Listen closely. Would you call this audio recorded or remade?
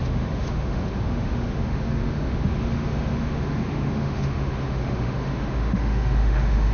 remade